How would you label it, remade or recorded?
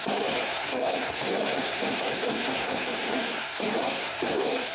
remade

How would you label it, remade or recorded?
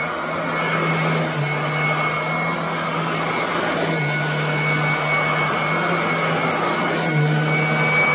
recorded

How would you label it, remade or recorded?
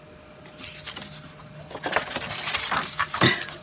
recorded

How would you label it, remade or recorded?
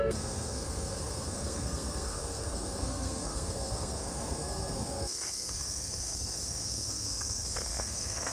remade